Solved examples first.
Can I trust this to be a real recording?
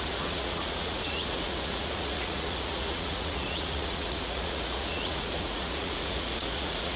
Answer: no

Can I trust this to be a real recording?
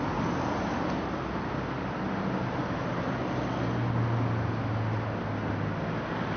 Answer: yes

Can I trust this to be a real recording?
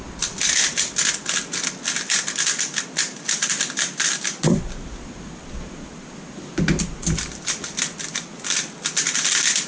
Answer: yes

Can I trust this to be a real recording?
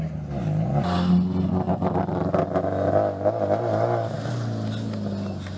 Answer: yes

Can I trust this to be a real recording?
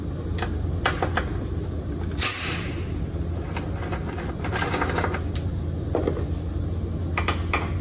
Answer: yes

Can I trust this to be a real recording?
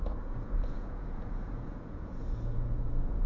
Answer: no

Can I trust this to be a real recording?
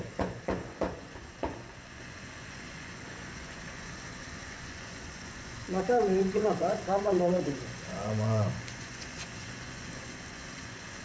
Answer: no